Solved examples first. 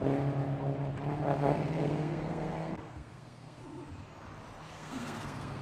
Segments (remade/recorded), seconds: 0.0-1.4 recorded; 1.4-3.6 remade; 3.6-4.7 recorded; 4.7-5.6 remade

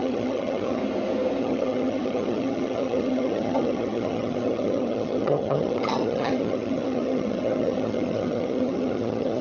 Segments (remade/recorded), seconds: 0.0-0.8 remade; 0.8-1.4 recorded; 1.4-9.4 remade

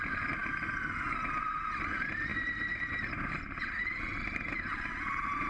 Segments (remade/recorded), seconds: 0.0-3.8 recorded; 3.8-4.3 remade; 4.3-5.5 recorded

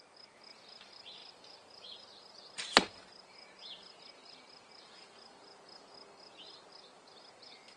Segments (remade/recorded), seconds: 0.0-7.8 recorded

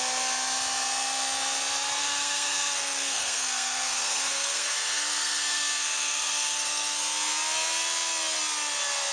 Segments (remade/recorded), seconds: 0.0-2.0 recorded; 2.0-7.0 remade; 7.0-9.1 recorded

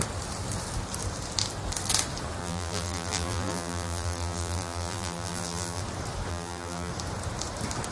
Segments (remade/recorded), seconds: 0.0-2.4 recorded; 2.4-5.8 remade; 5.8-6.3 recorded; 6.3-6.9 remade; 6.9-7.9 recorded

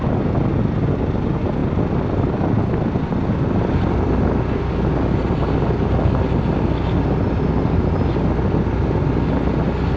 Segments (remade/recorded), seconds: 0.0-10.0 recorded

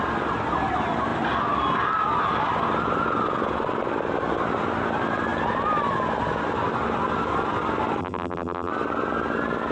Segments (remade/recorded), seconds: 0.0-8.0 recorded; 8.0-8.7 remade; 8.7-9.7 recorded